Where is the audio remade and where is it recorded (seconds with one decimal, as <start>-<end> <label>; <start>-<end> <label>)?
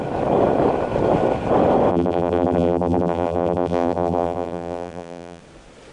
0.0-1.9 recorded; 1.9-5.4 remade; 5.4-5.9 recorded